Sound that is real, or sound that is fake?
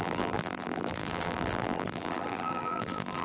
fake